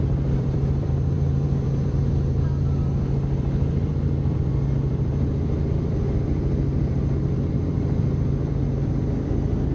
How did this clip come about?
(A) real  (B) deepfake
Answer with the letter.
B